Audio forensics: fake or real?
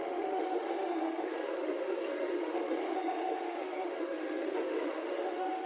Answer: fake